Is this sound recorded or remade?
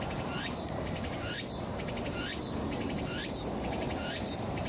recorded